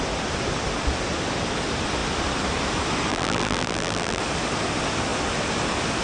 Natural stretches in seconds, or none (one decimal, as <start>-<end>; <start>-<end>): 0.0-3.1; 4.2-6.0